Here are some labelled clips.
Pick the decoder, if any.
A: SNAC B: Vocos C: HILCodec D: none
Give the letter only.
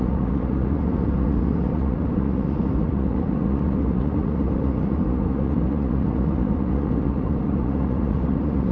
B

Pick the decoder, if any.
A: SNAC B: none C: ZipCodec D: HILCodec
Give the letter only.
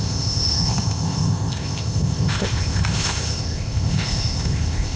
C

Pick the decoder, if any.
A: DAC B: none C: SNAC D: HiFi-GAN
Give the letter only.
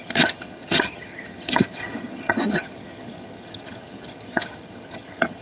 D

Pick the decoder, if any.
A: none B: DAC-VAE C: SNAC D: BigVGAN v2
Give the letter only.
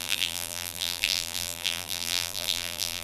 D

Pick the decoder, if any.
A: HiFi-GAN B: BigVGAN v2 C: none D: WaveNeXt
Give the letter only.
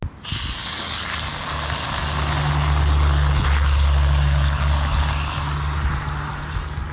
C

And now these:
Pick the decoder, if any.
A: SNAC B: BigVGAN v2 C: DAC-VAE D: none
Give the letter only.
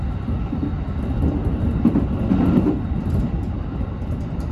B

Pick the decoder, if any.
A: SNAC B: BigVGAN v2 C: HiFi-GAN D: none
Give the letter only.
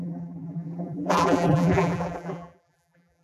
B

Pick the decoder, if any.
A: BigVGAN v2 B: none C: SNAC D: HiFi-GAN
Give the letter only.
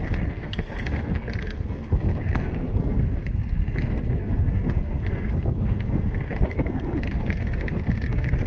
C